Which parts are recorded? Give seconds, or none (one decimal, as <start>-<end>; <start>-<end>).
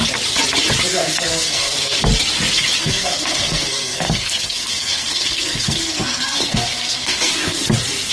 0.0-0.9; 2.0-2.8; 7.6-8.1